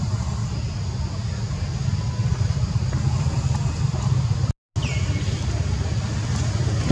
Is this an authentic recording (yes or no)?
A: yes